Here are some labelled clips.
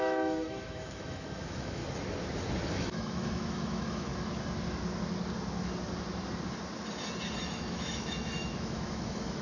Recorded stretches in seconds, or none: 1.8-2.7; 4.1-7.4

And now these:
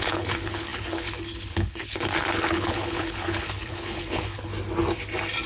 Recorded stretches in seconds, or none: 4.5-5.5

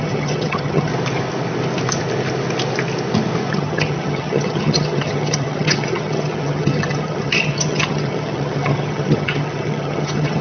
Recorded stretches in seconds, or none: 0.9-3.5

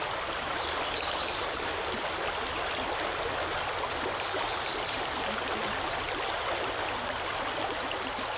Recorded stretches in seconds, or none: 0.0-8.4

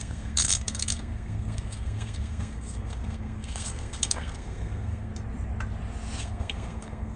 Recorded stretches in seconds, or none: 5.1-6.2

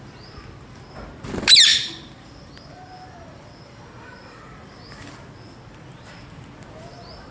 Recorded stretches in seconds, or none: 0.0-1.7; 4.5-7.3